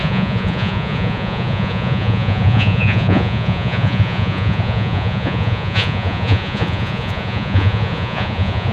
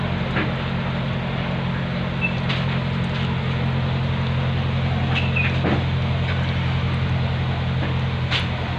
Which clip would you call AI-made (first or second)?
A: first